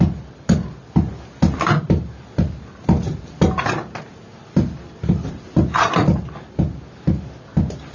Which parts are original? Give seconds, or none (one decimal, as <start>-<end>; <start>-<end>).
0.0-4.3; 5.3-7.9